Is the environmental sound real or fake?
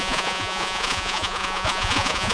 fake